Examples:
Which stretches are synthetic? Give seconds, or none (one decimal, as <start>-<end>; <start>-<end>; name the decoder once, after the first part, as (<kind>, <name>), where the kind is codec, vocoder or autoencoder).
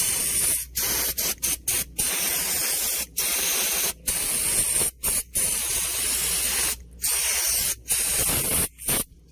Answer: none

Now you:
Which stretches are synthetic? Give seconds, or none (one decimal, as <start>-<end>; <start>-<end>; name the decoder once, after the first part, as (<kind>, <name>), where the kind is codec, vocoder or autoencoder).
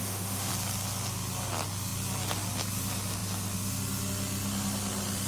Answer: 0.0-0.5 (autoencoder, DAC-VAE)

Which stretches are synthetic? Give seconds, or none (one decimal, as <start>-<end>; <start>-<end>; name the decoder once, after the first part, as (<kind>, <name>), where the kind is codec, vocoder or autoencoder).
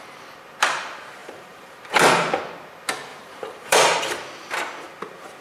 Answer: 1.2-2.4 (vocoder, BigVGAN v2); 3.1-4.0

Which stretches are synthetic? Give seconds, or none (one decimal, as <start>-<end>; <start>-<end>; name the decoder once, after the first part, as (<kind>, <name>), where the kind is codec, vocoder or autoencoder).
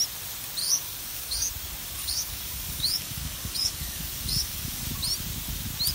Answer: 0.6-1.5 (codec, DAC); 2.0-4.9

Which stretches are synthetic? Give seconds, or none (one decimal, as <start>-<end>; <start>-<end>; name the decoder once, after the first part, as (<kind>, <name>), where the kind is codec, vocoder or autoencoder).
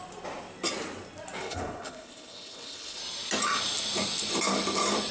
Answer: 1.4-3.0 (codec, HILCodec)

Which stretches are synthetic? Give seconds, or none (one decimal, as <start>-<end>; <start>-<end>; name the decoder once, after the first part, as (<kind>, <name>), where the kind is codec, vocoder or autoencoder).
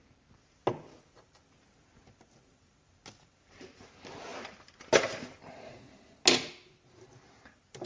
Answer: none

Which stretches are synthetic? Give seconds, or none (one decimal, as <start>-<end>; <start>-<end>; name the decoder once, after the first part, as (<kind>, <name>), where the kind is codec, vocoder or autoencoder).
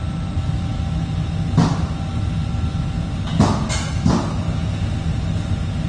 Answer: none